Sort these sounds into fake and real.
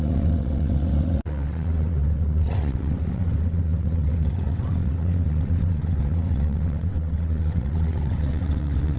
fake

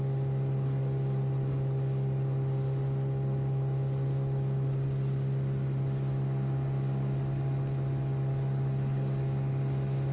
real